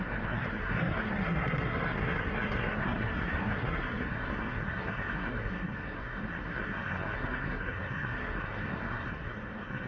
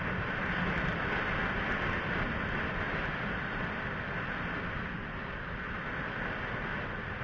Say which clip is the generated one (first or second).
first